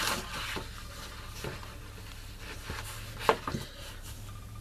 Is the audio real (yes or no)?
yes